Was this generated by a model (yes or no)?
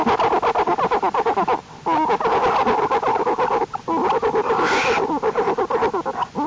no